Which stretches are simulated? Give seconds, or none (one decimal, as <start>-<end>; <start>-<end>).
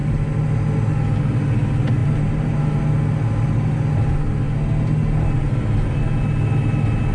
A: none